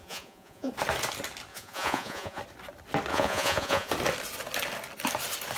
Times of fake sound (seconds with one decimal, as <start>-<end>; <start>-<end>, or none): 0.0-0.7; 1.5-2.4; 3.1-3.9